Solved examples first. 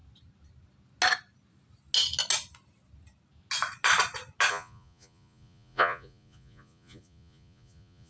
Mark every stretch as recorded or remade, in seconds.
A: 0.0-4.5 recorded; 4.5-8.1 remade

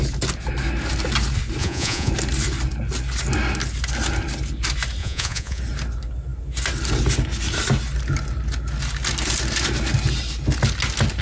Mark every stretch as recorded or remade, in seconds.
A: 0.0-1.6 recorded; 1.6-2.1 remade; 2.1-5.0 recorded; 5.0-5.6 remade; 5.6-11.2 recorded

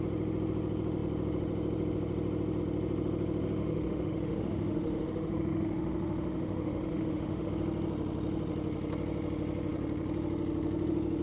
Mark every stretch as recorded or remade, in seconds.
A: 0.0-3.6 recorded; 3.6-7.5 remade; 7.5-11.2 recorded

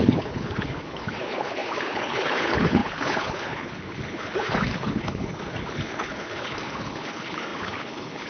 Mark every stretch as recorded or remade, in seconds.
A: 0.0-8.3 remade

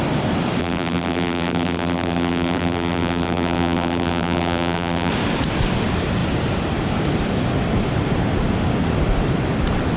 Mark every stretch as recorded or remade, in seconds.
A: 0.0-0.6 recorded; 0.6-5.1 remade; 5.1-10.0 recorded